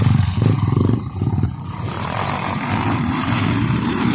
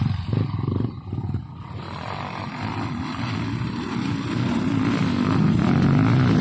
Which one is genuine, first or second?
second